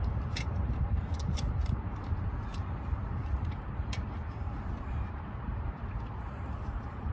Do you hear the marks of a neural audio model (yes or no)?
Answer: yes